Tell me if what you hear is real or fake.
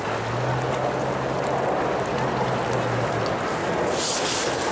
real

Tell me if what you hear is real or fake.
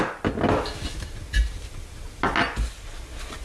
real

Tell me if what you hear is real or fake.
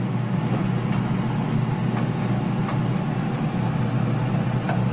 real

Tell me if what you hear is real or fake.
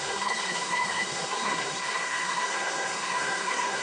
fake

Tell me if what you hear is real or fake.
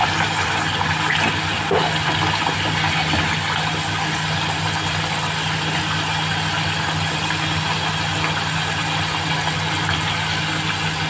real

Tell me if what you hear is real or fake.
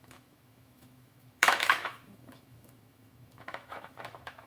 fake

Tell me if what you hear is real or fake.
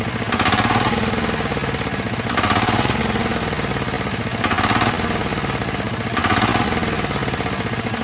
real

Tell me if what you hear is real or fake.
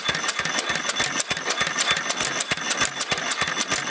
real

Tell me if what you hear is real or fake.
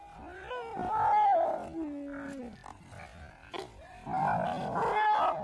real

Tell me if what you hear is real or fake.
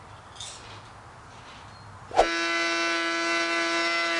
real